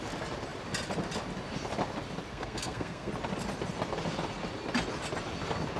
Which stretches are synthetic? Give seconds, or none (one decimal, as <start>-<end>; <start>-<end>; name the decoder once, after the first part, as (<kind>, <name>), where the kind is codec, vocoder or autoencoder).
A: 2.3-3.1 (codec, SNAC)